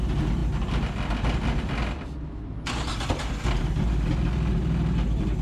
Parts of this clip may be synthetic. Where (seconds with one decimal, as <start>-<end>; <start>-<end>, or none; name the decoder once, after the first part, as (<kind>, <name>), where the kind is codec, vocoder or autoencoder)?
none